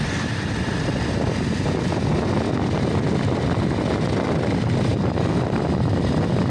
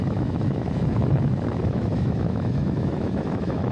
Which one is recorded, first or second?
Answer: first